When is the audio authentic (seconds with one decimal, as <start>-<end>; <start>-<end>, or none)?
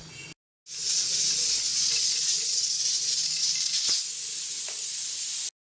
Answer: 0.0-1.7; 3.0-5.6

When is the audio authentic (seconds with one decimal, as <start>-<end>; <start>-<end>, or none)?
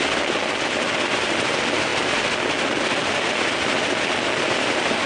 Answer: 0.0-5.1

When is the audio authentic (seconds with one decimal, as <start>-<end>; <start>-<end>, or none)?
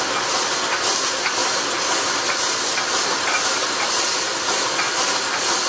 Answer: 0.0-5.7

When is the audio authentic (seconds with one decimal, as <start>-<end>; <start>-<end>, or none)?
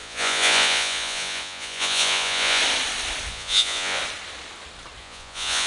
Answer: 2.6-3.3; 4.0-5.0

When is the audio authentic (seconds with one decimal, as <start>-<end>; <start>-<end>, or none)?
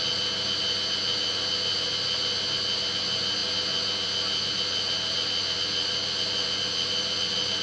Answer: 0.0-7.6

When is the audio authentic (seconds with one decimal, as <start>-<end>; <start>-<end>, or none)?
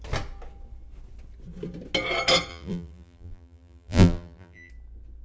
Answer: 0.0-2.5; 4.7-5.2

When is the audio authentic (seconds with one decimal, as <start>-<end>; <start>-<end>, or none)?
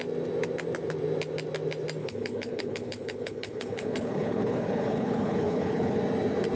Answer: 0.0-2.0; 6.0-6.6